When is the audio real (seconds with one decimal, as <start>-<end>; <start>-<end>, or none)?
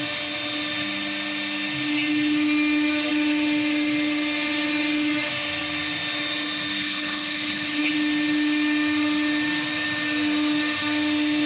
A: 0.0-6.8; 7.9-11.5